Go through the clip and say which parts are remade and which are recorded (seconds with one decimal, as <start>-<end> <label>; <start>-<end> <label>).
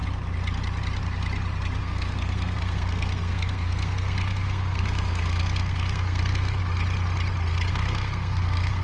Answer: 0.0-1.8 recorded; 1.8-6.6 remade; 6.6-7.7 recorded; 7.7-8.8 remade